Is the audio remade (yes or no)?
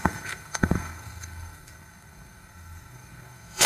yes